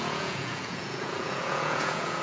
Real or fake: fake